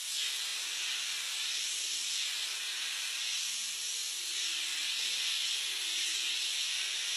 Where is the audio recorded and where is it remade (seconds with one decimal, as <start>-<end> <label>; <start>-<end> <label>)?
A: 0.0-7.2 recorded